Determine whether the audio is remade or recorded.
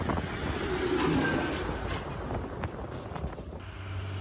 recorded